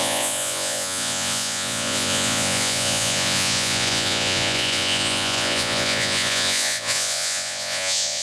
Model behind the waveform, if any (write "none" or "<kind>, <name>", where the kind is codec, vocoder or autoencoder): vocoder, Vocos